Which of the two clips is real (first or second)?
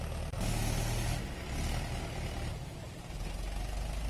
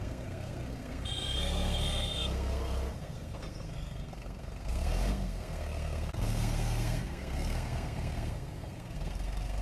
first